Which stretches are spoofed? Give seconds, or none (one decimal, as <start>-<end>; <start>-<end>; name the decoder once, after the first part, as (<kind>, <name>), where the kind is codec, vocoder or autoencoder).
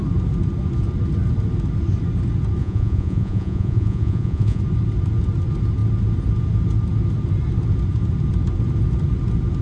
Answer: 2.6-4.6 (vocoder, Vocos)